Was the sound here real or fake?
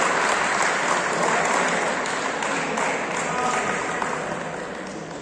real